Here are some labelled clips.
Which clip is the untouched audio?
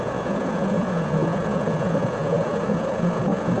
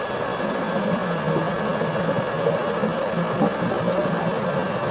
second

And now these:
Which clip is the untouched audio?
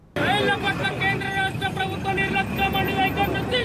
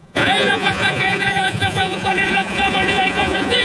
first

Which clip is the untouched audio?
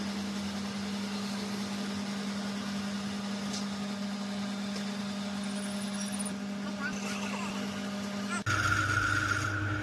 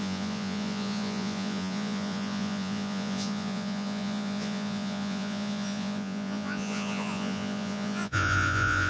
first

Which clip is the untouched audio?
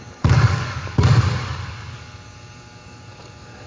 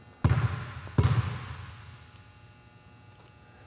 second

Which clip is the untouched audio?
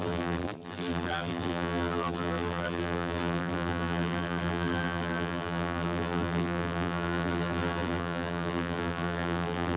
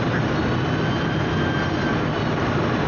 second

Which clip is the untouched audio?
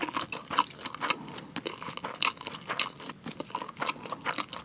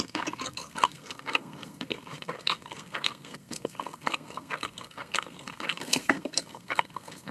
first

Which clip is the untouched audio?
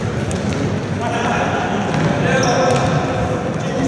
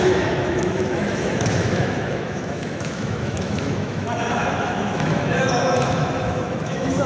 first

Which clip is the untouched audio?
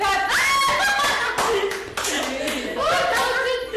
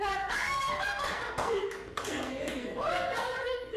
first